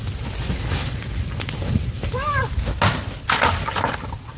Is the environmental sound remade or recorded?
recorded